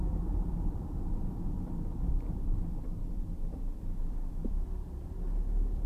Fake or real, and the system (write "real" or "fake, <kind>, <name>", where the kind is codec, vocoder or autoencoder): fake, vocoder, BigVGAN v2